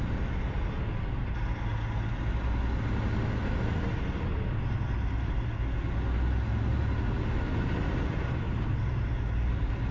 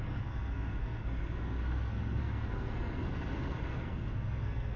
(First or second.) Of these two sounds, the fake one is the second